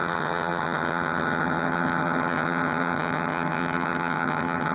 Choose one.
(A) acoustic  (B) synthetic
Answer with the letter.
B